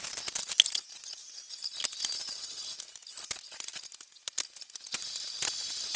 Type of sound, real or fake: real